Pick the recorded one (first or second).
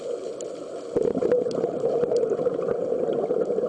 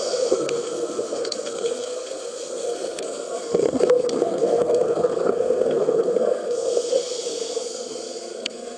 first